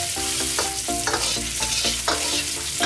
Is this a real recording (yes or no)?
yes